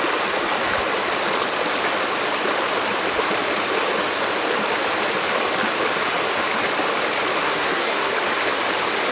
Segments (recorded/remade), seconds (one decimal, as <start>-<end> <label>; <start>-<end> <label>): 0.0-7.4 recorded; 7.4-8.1 remade; 8.1-9.1 recorded